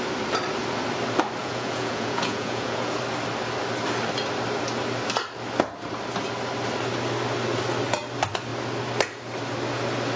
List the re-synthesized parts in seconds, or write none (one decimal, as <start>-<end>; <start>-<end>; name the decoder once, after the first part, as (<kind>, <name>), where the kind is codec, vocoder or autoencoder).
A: 1.4-3.0 (vocoder, Vocos)